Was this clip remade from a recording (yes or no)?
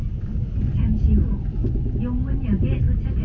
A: no